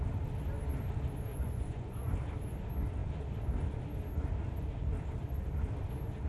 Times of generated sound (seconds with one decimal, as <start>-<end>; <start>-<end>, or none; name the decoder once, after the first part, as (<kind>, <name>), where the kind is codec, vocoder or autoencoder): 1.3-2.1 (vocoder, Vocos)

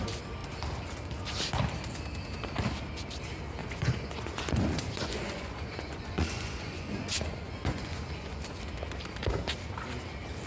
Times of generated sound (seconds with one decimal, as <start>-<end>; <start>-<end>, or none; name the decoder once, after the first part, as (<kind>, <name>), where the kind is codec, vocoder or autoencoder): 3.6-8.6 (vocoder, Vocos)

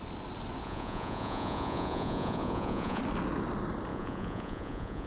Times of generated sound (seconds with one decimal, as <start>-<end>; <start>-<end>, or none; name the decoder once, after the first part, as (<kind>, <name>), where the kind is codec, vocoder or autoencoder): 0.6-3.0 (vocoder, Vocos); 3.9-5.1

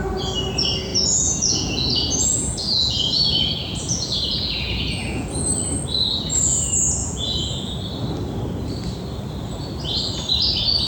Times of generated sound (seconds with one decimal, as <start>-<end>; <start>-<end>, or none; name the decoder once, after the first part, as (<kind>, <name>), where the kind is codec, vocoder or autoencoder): 0.9-5.4 (vocoder, Vocos); 7.0-7.7

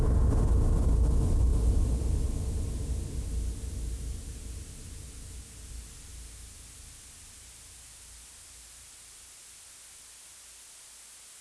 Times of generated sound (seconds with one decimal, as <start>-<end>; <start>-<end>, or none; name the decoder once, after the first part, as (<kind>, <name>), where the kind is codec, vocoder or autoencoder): none